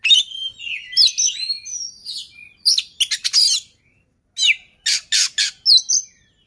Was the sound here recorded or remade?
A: recorded